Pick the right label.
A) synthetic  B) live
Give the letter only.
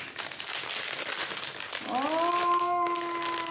B